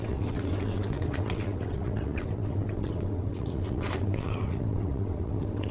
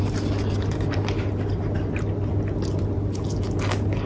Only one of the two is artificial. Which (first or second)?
first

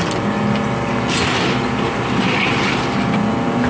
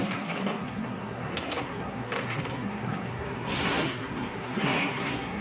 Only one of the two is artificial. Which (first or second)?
second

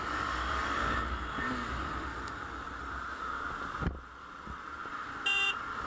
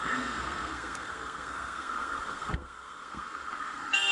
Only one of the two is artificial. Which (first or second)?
second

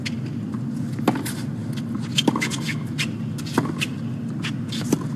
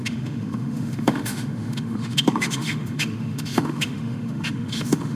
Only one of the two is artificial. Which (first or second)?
second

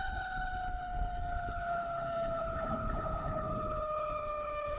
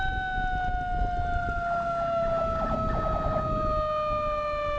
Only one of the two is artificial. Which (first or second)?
first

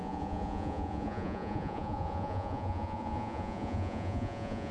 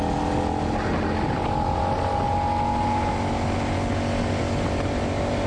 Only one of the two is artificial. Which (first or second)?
first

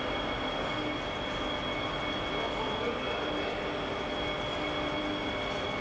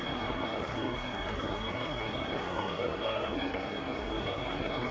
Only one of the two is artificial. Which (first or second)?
second